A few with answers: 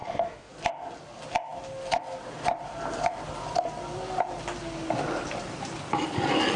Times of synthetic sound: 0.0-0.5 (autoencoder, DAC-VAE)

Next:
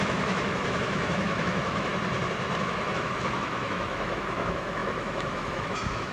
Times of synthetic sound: 0.0-1.9 (autoencoder, DAC-VAE); 2.6-6.1